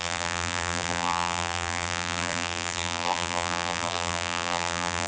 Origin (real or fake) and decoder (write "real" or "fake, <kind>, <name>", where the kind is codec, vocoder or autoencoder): fake, vocoder, BigVGAN v2